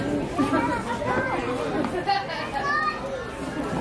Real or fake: real